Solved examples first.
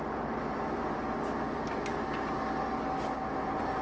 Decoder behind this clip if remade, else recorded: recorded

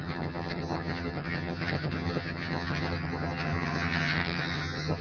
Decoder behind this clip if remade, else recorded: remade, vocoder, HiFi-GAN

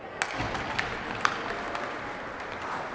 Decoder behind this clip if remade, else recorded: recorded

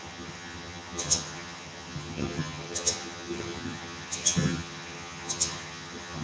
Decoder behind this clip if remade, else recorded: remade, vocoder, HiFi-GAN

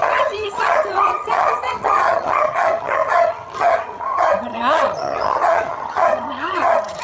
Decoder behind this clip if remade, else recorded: remade, vocoder, HiFi-GAN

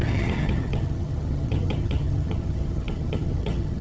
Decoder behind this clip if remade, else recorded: remade, vocoder, HiFi-GAN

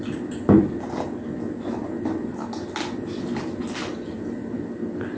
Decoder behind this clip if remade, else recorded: recorded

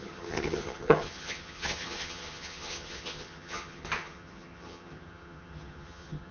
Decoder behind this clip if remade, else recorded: remade, vocoder, HiFi-GAN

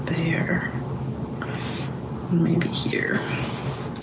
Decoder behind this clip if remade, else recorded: recorded